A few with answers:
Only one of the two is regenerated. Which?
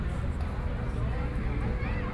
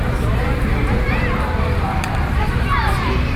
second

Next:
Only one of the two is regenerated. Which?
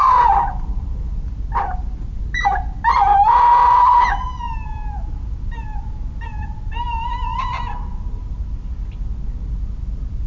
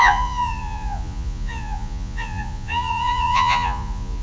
second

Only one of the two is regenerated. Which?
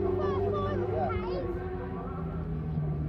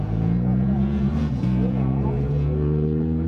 second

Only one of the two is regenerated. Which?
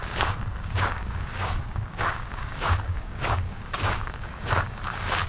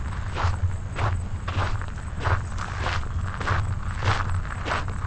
first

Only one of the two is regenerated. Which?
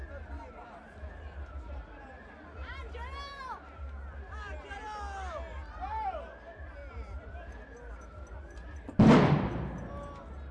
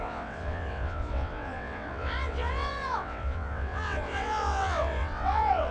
second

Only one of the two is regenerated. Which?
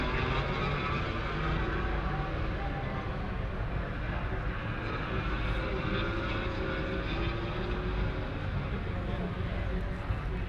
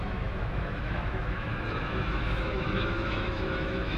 second